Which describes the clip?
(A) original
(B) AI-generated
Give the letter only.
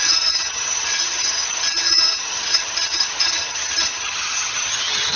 B